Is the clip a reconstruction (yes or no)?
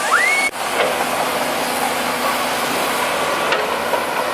no